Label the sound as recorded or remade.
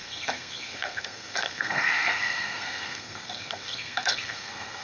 remade